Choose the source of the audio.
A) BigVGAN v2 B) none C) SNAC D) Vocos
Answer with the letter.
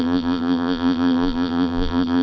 A